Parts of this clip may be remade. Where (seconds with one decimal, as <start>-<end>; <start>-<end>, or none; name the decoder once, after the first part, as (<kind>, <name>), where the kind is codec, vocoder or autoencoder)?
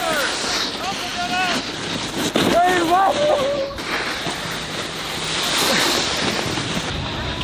none